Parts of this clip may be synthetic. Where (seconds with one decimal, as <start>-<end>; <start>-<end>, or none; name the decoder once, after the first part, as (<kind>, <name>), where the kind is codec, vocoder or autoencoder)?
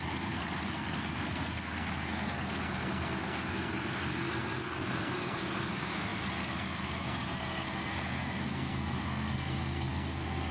0.0-10.5 (codec, SNAC)